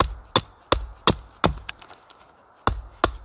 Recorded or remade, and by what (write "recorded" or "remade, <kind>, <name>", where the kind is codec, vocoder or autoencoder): recorded